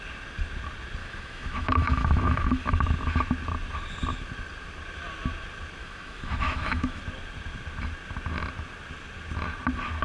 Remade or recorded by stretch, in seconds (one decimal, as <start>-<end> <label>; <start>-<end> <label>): 0.0-1.0 recorded; 1.0-2.8 remade; 2.8-5.8 recorded; 5.8-7.0 remade; 7.0-10.0 recorded